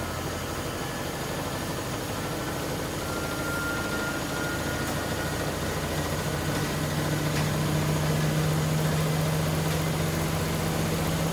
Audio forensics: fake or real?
real